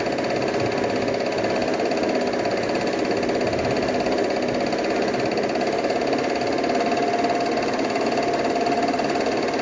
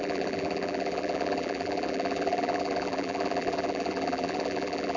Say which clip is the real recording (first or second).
first